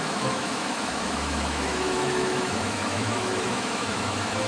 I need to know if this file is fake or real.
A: fake